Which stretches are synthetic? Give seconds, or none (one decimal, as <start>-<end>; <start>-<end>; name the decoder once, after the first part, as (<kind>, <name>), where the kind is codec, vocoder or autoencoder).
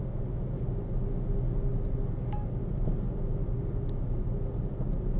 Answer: none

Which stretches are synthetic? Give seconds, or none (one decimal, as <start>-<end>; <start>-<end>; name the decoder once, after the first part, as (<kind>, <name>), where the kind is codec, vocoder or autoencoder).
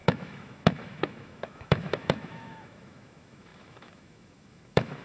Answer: 0.0-5.0 (autoencoder, DAC-VAE)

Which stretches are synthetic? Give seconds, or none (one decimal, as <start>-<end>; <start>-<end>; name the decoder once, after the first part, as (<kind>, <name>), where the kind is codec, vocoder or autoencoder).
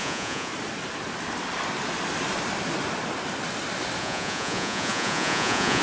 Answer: 0.0-0.5 (vocoder, Vocos); 4.0-5.8